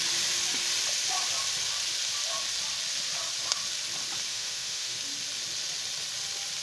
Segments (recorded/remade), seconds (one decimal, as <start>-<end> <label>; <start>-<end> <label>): 0.0-4.3 recorded; 4.3-5.0 remade; 5.0-6.6 recorded